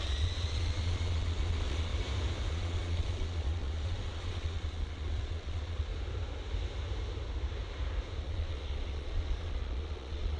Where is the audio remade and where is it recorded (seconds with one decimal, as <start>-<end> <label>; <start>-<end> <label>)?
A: 0.0-1.9 remade; 1.9-2.5 recorded; 2.5-5.9 remade; 5.9-8.2 recorded; 8.2-10.4 remade